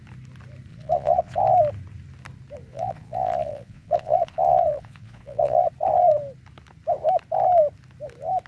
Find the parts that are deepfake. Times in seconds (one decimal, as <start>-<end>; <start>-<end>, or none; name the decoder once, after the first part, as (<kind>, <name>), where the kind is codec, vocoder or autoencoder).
0.7-1.4 (vocoder, Vocos); 2.7-5.7